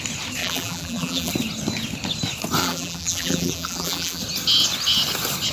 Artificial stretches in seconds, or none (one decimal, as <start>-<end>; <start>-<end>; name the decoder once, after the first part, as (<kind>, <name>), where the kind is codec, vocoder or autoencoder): 0.4-1.3 (vocoder, BigVGAN v2); 2.6-4.2